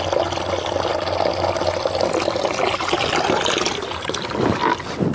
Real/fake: real